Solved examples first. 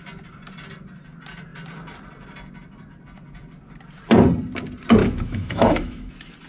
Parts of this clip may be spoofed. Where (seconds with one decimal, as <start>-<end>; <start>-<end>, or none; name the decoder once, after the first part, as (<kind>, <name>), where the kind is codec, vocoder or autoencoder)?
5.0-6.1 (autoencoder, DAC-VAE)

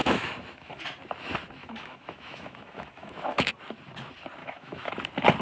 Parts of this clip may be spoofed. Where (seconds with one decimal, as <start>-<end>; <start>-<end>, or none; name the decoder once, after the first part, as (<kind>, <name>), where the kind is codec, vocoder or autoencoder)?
0.0-0.8 (autoencoder, DAC-VAE); 1.6-3.5; 4.4-4.9

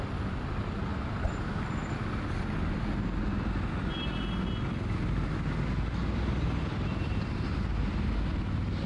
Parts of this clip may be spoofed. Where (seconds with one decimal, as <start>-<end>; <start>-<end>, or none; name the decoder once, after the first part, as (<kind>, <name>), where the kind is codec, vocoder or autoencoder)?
none